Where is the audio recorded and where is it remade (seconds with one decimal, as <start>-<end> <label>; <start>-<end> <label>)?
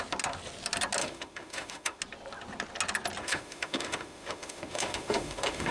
0.0-1.0 recorded; 1.0-2.0 remade; 2.0-3.2 recorded; 3.2-5.7 remade